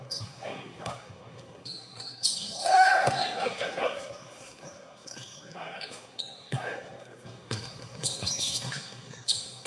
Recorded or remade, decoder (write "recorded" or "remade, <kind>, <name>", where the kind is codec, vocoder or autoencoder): remade, codec, SNAC